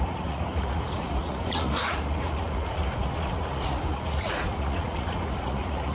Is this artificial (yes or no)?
yes